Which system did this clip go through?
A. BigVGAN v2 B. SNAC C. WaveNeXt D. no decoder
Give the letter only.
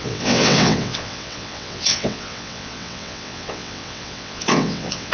C